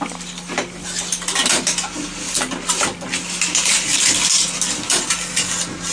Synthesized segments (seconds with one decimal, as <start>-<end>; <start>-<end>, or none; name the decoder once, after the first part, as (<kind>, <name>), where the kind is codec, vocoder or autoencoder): none

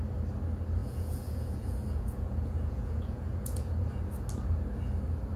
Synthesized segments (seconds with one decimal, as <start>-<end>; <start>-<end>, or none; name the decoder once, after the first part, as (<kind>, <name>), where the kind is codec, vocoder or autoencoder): 0.8-4.0 (vocoder, Vocos)